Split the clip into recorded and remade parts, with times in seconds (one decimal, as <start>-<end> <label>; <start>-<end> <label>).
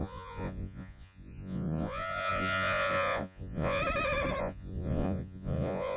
0.0-3.8 remade; 3.8-4.4 recorded; 4.4-6.0 remade